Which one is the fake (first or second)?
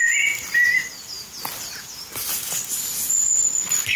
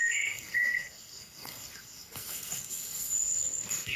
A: second